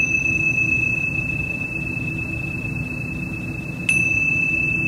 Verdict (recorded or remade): recorded